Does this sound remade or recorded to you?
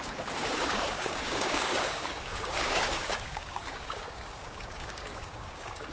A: remade